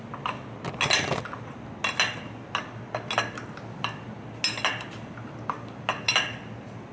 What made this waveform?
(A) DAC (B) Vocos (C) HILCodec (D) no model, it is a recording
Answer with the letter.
D